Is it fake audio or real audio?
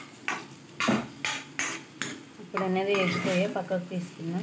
real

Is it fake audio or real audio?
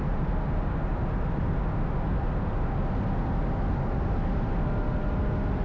real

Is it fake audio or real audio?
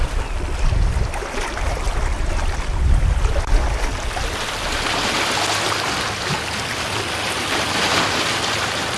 real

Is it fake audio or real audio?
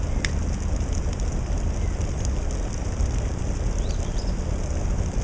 real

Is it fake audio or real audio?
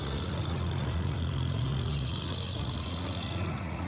fake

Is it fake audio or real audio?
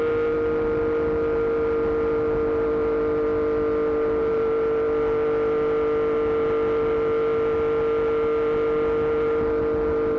real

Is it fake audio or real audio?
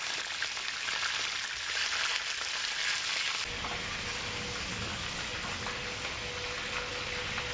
real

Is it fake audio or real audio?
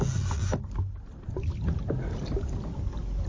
real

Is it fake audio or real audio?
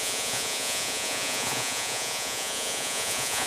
fake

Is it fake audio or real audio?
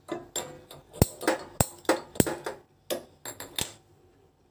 real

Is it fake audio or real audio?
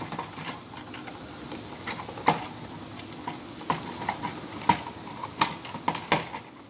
real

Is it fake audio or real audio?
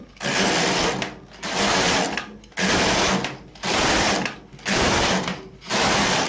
real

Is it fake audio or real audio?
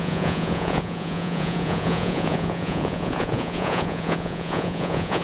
fake